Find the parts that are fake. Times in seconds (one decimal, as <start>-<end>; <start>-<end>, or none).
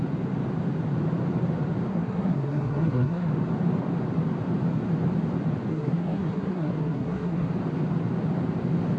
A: 1.9-3.3; 5.7-7.5